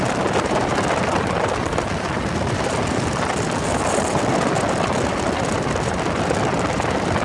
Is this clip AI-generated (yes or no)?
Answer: yes